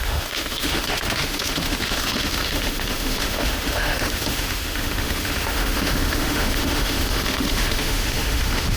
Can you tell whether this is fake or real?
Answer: fake